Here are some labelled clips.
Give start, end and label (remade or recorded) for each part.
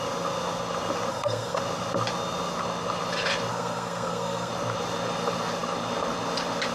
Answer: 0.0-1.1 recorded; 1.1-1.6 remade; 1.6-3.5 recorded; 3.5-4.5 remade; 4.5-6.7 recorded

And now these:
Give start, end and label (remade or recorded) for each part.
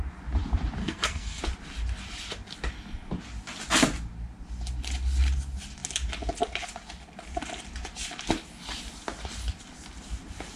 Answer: 0.0-0.8 recorded; 0.8-1.4 remade; 1.4-10.6 recorded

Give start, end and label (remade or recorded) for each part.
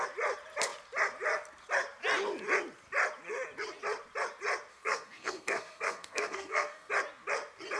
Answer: 0.0-4.7 recorded; 4.7-6.9 remade; 6.9-7.8 recorded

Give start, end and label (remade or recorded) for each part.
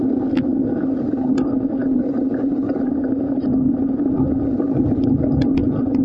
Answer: 0.0-6.0 recorded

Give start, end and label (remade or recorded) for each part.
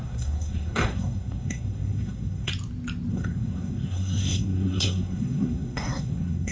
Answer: 0.0-2.5 remade; 2.5-3.1 recorded; 3.1-6.5 remade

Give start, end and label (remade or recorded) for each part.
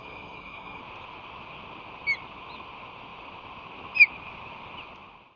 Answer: 0.0-0.8 remade; 0.8-5.4 recorded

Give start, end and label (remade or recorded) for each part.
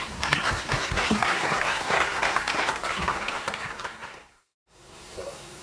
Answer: 0.0-5.6 remade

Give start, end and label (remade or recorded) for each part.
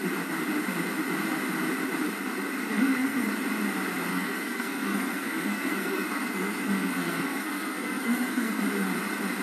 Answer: 0.0-2.7 recorded; 2.7-3.3 remade; 3.3-4.1 recorded; 4.1-8.6 remade; 8.6-9.4 recorded